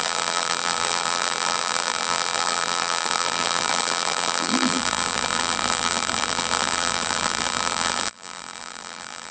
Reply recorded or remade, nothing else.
remade